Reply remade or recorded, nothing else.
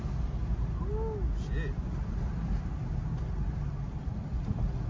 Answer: recorded